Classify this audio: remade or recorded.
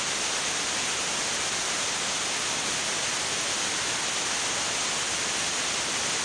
recorded